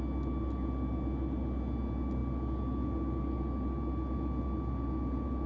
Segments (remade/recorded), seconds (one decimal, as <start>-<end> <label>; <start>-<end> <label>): 0.0-5.5 recorded

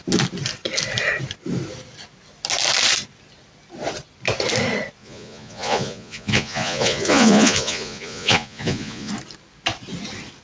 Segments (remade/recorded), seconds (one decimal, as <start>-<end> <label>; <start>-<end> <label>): 0.0-5.0 recorded; 5.0-9.1 remade; 9.1-10.4 recorded

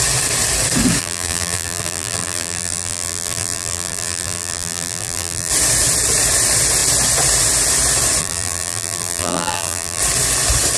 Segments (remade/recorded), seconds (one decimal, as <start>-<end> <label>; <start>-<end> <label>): 0.0-1.0 recorded; 1.0-5.5 remade; 5.5-8.2 recorded; 8.2-10.0 remade; 10.0-10.8 recorded

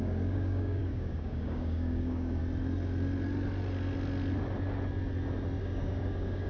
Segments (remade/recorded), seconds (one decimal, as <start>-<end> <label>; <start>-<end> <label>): 0.0-2.4 remade; 2.4-5.6 recorded; 5.6-6.5 remade

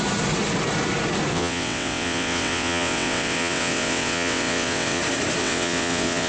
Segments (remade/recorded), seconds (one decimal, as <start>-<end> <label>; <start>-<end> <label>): 0.0-1.3 recorded; 1.3-5.0 remade; 5.0-5.4 recorded; 5.4-6.3 remade

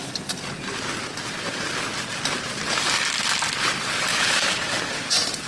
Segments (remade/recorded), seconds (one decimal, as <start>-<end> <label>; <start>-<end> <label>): 0.0-4.1 recorded; 4.1-4.8 remade; 4.8-5.5 recorded

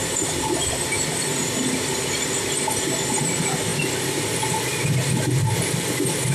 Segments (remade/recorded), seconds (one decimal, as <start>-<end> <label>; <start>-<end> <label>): 0.0-0.7 remade; 0.7-6.3 recorded